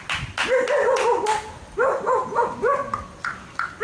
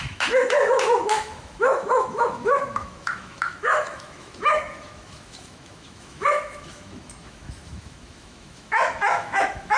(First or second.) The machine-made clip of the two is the second